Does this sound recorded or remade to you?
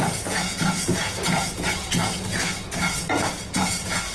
remade